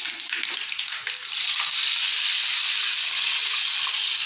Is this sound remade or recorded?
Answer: recorded